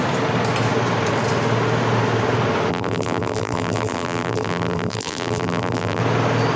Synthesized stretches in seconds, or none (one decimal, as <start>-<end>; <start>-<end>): 2.7-6.0